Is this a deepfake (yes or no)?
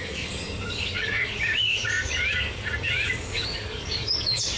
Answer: yes